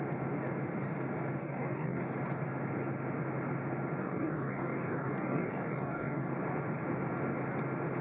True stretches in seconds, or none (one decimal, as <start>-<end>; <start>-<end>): 0.0-1.4; 2.0-4.0; 6.3-8.0